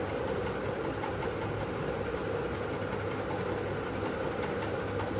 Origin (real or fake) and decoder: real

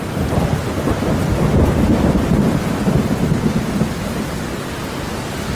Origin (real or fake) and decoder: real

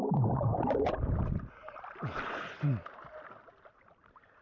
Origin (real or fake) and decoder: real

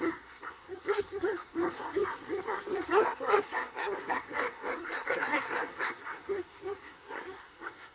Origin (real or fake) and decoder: fake, codec, SNAC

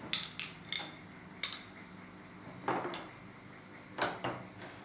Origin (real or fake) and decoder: real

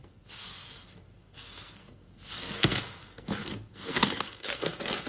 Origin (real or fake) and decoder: fake, codec, SNAC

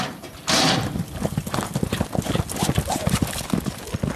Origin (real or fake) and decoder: real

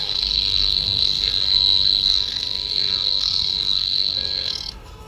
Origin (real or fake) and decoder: fake, codec, SNAC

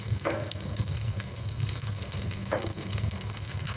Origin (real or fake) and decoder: fake, codec, SNAC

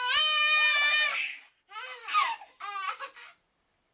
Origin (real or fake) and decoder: real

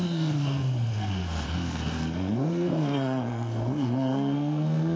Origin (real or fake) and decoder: fake, codec, SNAC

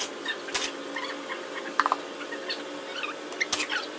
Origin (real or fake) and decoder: real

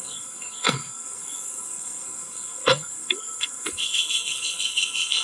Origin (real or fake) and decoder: fake, codec, SNAC